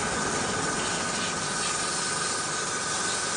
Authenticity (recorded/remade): recorded